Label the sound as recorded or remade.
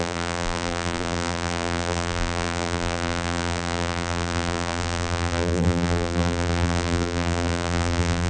remade